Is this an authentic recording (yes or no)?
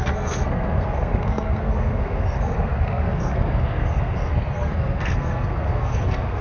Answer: no